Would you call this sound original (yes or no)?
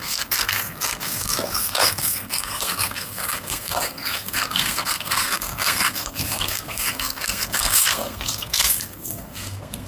no